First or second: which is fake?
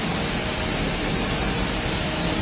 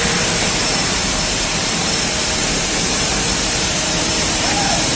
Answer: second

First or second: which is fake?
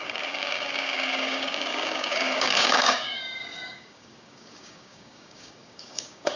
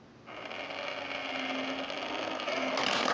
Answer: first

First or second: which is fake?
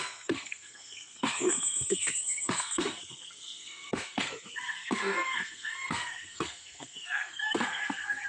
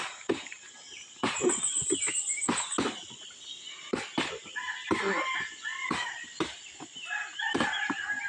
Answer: first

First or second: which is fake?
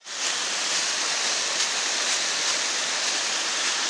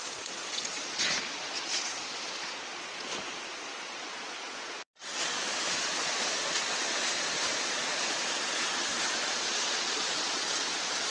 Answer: second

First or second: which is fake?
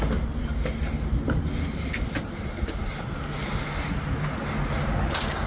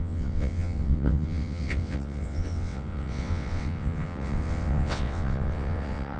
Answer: second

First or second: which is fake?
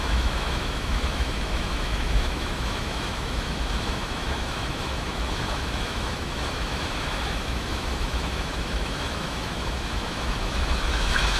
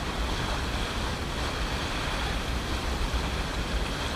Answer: first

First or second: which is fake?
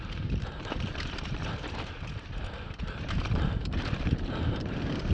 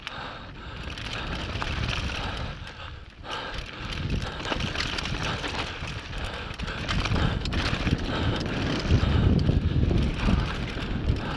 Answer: first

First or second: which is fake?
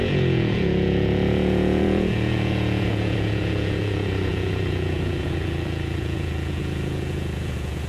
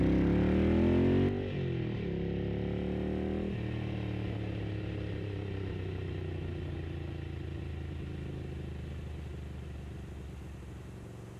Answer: first